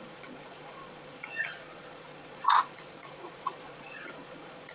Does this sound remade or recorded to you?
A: remade